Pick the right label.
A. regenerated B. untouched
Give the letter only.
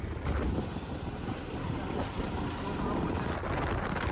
B